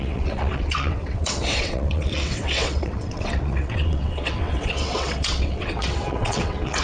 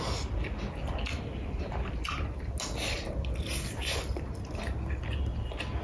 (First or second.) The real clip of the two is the second